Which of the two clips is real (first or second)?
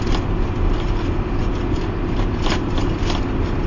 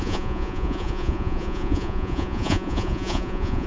first